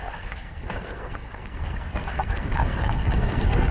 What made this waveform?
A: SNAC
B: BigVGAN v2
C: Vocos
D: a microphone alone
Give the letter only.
A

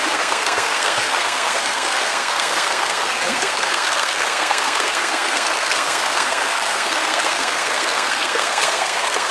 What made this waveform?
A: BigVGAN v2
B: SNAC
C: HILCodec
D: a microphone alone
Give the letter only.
B